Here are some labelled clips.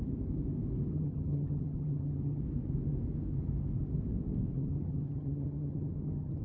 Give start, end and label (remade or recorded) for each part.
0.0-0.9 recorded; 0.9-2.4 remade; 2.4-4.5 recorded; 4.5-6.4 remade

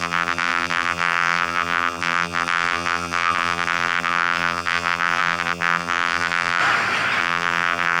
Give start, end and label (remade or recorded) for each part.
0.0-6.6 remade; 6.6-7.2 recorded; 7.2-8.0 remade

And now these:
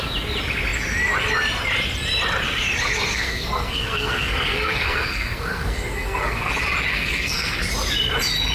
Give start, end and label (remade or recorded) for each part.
0.0-3.1 recorded; 3.1-6.5 remade; 6.5-6.9 recorded; 6.9-7.6 remade; 7.6-8.5 recorded

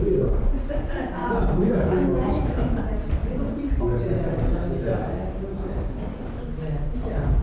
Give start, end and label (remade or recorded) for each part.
0.0-1.2 recorded; 1.2-2.8 remade; 2.8-7.4 recorded

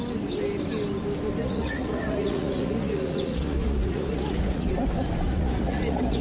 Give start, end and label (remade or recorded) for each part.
0.0-1.4 recorded; 1.4-4.7 remade; 4.7-5.3 recorded; 5.3-6.2 remade

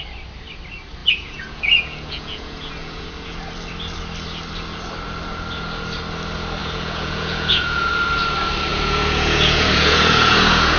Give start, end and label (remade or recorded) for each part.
0.0-1.0 recorded; 1.0-3.5 remade; 3.5-6.6 recorded; 6.6-7.9 remade; 7.9-8.7 recorded; 8.7-10.8 remade